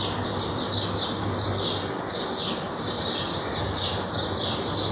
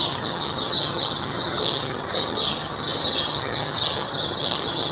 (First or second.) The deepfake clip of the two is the second